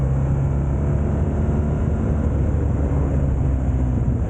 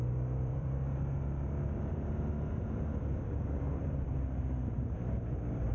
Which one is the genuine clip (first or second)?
first